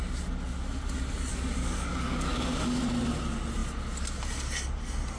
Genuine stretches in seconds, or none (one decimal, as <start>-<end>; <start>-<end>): 0.0-1.3; 2.8-5.2